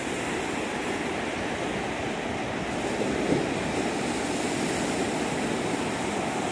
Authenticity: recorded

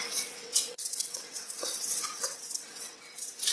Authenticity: remade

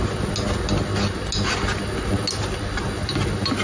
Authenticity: recorded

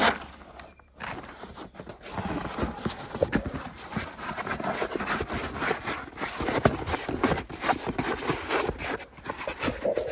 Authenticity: recorded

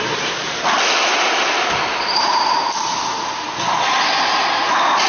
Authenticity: recorded